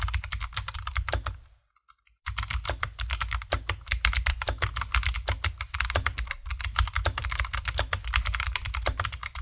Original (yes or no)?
no